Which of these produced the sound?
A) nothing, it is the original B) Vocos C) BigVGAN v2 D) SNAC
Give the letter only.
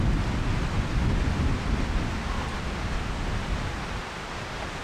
A